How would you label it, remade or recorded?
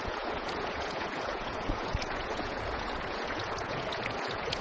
remade